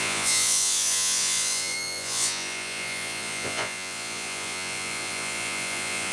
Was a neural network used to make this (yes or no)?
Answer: yes